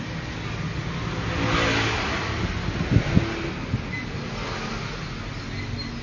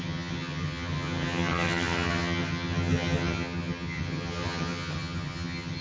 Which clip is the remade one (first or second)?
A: second